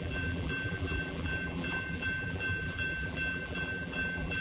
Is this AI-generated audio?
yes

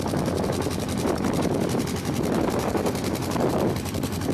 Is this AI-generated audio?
yes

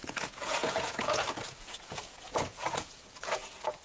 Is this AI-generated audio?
yes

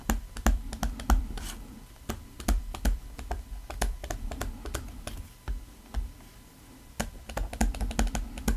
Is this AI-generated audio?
no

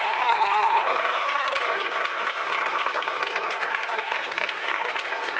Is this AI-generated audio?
yes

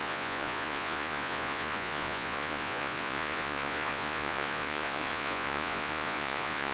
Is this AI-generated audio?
yes